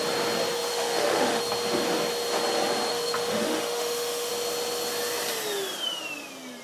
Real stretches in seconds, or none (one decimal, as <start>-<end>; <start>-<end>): 0.0-0.7; 1.4-2.9; 4.3-6.6